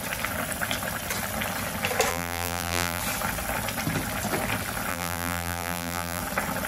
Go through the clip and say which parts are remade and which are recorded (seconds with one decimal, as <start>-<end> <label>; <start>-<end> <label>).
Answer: 0.0-2.1 recorded; 2.1-3.0 remade; 3.0-4.9 recorded; 4.9-6.2 remade; 6.2-6.7 recorded